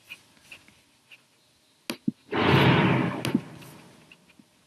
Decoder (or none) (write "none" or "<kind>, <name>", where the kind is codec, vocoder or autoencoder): none